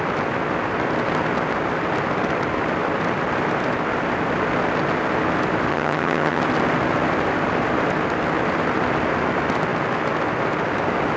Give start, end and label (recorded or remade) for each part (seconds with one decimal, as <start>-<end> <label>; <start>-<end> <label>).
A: 0.0-5.7 recorded; 5.7-6.4 remade; 6.4-11.2 recorded